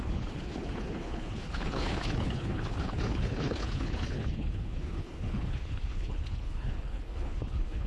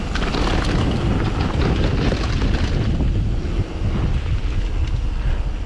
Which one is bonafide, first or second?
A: second